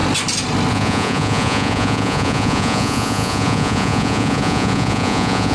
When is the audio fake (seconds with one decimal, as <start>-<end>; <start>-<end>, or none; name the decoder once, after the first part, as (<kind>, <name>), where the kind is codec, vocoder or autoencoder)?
0.7-5.5 (vocoder, Vocos)

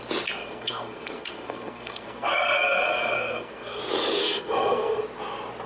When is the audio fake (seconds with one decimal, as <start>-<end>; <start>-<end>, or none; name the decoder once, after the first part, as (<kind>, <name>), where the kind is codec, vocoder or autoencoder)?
0.4-3.8 (codec, SNAC); 4.2-5.0